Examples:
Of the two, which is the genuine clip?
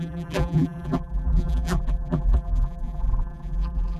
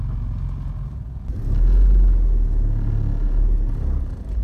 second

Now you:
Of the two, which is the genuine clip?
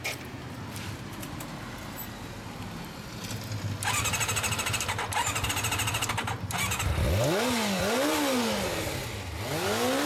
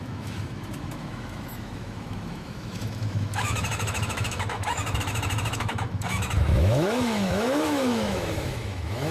first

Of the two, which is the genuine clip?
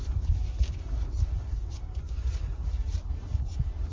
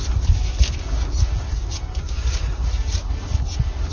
second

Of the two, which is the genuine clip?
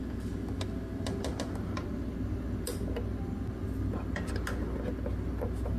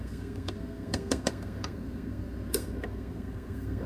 first